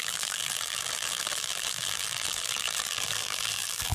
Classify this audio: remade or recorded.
remade